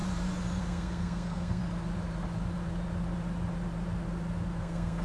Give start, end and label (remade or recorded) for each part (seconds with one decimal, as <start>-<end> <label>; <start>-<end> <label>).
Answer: 0.0-0.6 recorded; 0.6-1.6 remade; 1.6-4.6 recorded; 4.6-5.0 remade